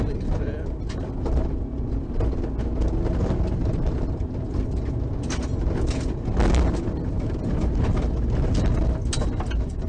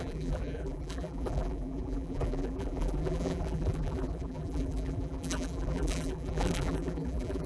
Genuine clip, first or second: first